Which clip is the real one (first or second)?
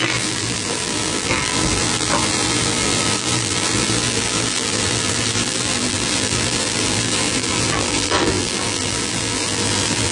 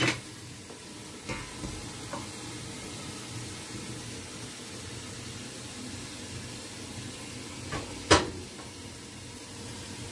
second